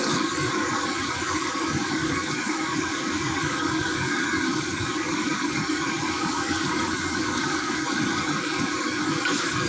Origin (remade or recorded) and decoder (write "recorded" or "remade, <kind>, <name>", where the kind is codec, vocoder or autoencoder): remade, codec, DAC